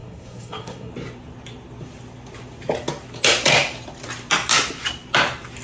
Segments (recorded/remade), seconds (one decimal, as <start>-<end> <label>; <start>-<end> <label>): 0.0-0.9 remade; 0.9-5.6 recorded